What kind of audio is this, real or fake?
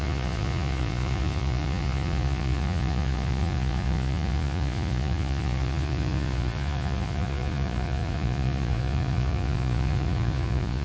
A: fake